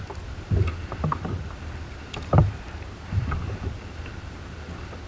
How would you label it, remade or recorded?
recorded